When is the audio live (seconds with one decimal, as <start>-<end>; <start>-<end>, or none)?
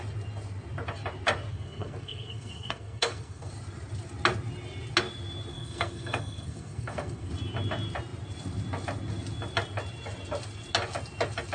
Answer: 0.0-1.5; 3.5-5.5; 7.3-11.5